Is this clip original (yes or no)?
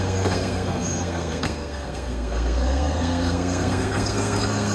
no